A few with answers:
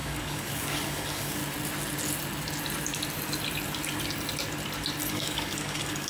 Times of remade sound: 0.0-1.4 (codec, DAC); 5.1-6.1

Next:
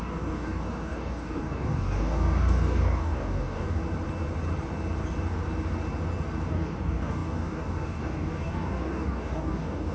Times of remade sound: 0.0-3.8 (codec, DAC); 6.5-9.9

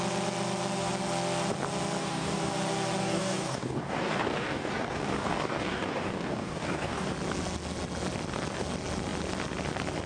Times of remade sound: 2.0-2.5 (codec, DAC); 3.0-7.1

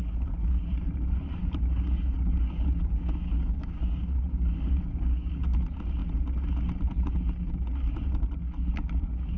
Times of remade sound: 1.4-5.6 (codec, DAC)